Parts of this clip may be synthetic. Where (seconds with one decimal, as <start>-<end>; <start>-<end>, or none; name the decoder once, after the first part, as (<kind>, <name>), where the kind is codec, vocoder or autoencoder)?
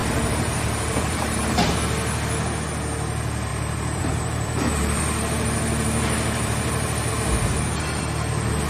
0.0-1.6 (vocoder, BigVGAN v2); 3.5-7.1